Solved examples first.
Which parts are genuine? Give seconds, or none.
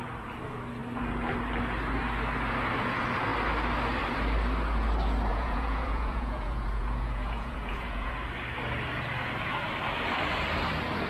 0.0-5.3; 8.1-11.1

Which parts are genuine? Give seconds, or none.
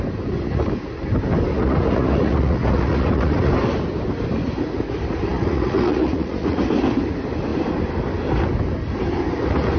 0.0-1.5; 3.5-5.3; 6.6-9.8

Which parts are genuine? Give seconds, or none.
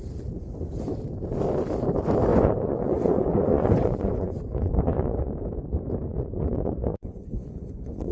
0.0-2.3; 5.3-6.1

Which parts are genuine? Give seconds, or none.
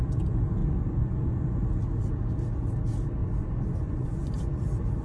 0.0-0.6; 1.6-3.2; 4.6-5.0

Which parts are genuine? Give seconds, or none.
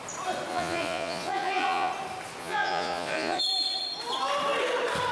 0.0-0.5; 1.9-2.4; 3.4-5.1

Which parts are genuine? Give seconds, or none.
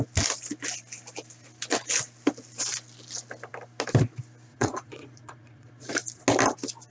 0.0-4.5; 5.9-6.9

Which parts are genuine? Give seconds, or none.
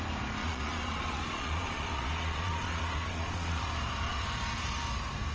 0.0-0.4; 3.6-5.3